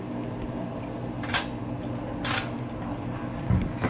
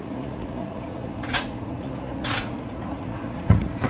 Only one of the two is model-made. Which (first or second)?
second